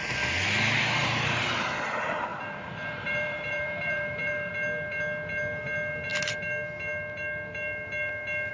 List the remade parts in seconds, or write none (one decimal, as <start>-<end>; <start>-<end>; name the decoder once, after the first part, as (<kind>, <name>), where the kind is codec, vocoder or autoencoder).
2.3-4.5 (vocoder, BigVGAN v2)